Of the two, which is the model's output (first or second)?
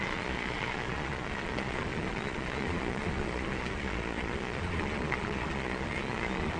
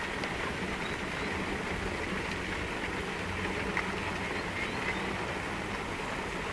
first